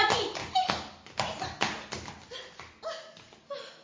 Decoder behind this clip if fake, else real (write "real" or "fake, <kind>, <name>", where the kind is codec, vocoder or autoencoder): real